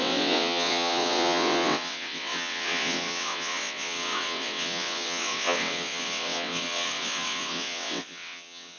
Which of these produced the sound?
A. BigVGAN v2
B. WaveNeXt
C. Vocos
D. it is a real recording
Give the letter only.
B